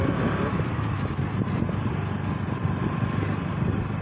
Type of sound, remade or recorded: recorded